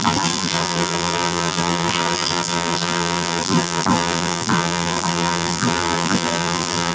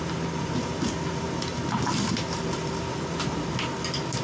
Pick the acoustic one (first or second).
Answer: second